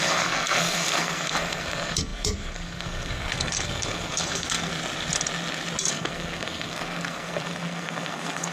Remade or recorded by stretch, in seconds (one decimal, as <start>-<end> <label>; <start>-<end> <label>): 0.0-4.7 remade; 4.7-5.9 recorded; 5.9-8.5 remade

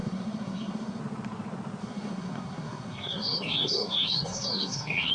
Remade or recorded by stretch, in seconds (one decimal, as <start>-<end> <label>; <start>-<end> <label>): 0.0-1.0 remade; 1.0-1.8 recorded; 1.8-5.1 remade

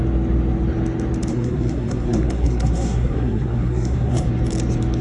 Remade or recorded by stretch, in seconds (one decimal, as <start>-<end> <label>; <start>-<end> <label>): 0.0-1.3 recorded; 1.3-4.3 remade; 4.3-5.0 recorded

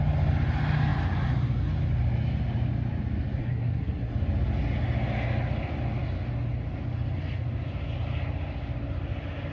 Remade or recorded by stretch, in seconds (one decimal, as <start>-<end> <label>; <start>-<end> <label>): 0.0-3.4 recorded; 3.4-4.1 remade; 4.1-9.5 recorded

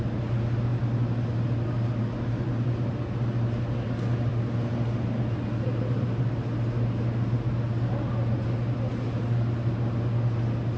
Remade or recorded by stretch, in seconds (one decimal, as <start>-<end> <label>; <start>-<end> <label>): 0.0-10.8 recorded

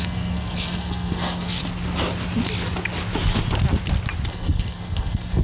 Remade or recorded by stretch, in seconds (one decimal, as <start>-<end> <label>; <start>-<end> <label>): 0.0-1.6 remade; 1.6-4.3 recorded; 4.3-5.4 remade